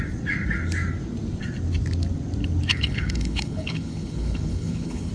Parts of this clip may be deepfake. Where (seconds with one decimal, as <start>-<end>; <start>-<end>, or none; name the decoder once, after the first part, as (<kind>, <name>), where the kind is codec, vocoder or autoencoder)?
2.7-5.1 (codec, HILCodec)